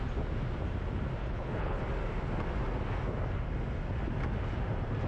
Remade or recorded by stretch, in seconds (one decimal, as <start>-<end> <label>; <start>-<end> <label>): 0.0-1.2 recorded; 1.2-1.8 remade; 1.8-5.1 recorded